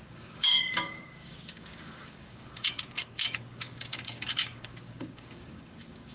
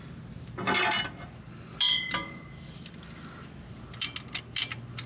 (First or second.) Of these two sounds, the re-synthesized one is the first